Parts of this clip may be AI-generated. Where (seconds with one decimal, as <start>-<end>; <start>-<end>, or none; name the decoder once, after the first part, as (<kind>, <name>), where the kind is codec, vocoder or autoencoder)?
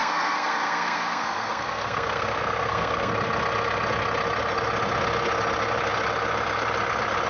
0.0-3.1 (codec, SNAC)